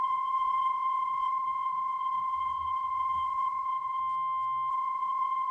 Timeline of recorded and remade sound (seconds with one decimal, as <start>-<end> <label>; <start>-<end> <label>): 0.0-4.0 remade; 4.0-4.7 recorded; 4.7-5.5 remade